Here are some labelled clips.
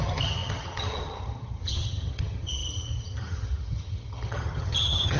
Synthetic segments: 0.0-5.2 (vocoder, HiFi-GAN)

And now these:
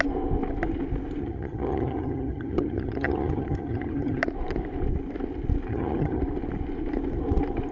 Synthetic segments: 1.2-4.2 (vocoder, HiFi-GAN); 5.7-6.2

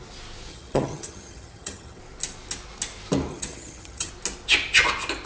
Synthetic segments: 0.5-2.0 (vocoder, HiFi-GAN); 3.3-4.1

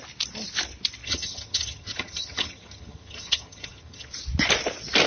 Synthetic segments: 1.0-4.1 (vocoder, HiFi-GAN)

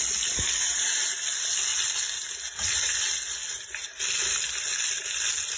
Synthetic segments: none